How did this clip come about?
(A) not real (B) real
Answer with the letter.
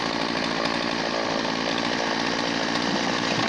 B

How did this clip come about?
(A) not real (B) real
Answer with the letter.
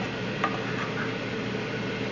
B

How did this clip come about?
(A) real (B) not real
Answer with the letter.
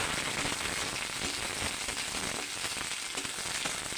A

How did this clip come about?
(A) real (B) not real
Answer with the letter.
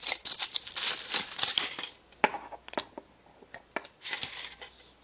A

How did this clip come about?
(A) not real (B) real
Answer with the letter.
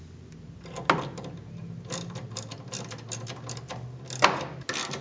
B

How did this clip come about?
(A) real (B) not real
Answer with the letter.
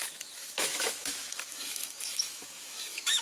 B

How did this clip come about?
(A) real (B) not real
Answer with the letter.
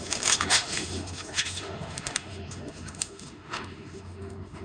B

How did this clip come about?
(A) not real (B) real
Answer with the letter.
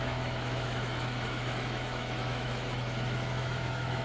A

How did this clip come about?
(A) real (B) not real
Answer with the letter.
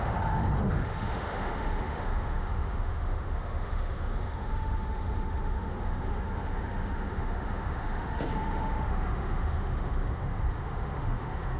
B